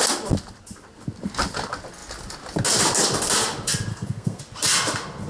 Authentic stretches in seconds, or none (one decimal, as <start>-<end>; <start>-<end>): 0.0-3.9; 4.4-5.3